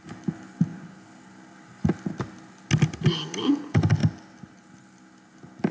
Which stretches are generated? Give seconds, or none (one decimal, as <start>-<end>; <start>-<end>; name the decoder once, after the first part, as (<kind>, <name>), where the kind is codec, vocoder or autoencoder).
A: none